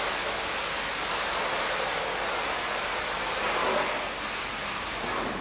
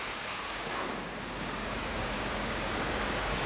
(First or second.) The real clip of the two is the first